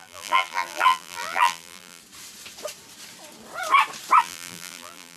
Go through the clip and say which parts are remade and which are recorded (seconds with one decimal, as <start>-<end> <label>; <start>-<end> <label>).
0.0-2.0 remade; 2.0-4.2 recorded; 4.2-5.2 remade